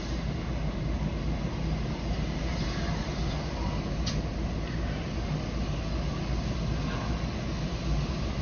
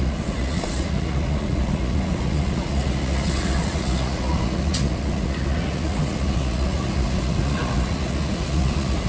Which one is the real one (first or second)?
first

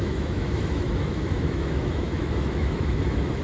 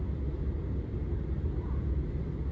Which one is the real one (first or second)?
second